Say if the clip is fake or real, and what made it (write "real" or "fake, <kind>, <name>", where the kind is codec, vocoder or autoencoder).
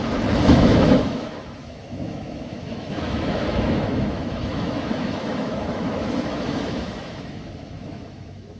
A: fake, autoencoder, DAC-VAE